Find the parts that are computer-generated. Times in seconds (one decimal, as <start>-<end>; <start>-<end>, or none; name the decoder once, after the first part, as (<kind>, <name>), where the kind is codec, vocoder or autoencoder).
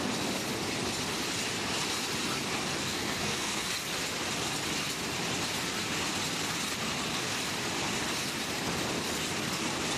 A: 2.8-3.7 (codec, SNAC)